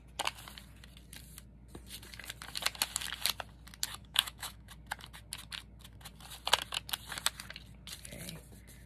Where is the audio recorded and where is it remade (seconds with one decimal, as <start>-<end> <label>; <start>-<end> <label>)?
0.0-4.0 recorded; 4.0-4.7 remade; 4.7-8.9 recorded